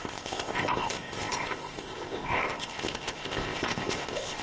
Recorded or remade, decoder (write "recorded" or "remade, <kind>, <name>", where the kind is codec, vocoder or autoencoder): remade, codec, ZipCodec